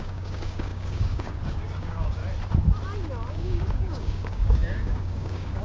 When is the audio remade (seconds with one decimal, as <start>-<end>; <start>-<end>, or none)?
0.0-2.2; 3.3-5.6